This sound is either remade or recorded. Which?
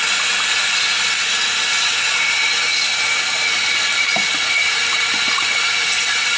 recorded